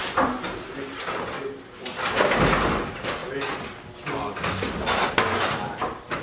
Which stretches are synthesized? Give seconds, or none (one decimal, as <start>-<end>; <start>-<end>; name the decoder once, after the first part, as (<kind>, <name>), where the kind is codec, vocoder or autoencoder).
0.0-3.2 (vocoder, BigVGAN v2); 5.1-6.2